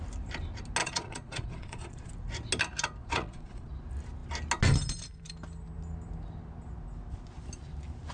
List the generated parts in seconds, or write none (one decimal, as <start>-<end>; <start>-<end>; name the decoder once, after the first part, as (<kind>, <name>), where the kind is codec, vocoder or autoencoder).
0.8-2.1 (vocoder, Vocos); 3.0-3.7